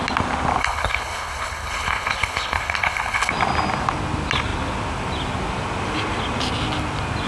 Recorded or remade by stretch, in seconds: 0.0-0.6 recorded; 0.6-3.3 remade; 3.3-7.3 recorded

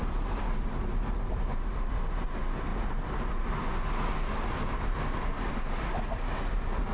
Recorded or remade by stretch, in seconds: 0.0-6.9 recorded

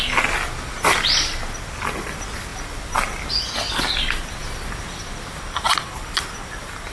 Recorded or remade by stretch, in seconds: 0.0-6.9 recorded

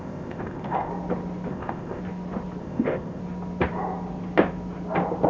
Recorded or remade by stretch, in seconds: 0.0-0.9 remade; 0.9-1.5 recorded; 1.5-2.0 remade; 2.0-2.6 recorded; 2.6-3.2 remade; 3.2-5.3 recorded

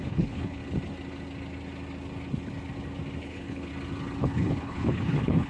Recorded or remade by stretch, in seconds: 0.0-0.6 remade; 0.6-3.2 recorded; 3.2-3.7 remade; 3.7-4.2 recorded; 4.2-5.5 remade

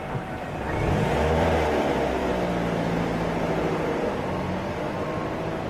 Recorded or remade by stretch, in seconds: 0.0-2.2 remade; 2.2-5.7 recorded

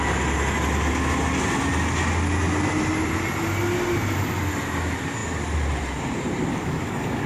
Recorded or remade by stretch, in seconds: 0.0-6.5 recorded; 6.5-7.3 remade

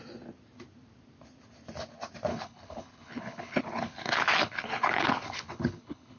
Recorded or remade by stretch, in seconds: 0.0-2.3 recorded; 2.3-6.2 remade